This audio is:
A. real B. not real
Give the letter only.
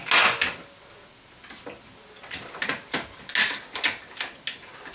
A